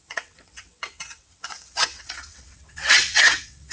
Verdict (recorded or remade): remade